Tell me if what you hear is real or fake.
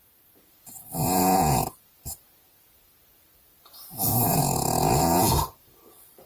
fake